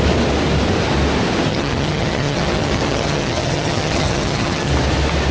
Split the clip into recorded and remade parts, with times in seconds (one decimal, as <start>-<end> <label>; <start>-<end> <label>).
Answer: 0.0-1.5 recorded; 1.5-4.7 remade; 4.7-5.3 recorded